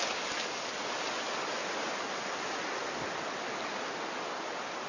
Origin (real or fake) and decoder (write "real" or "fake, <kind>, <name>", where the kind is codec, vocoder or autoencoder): real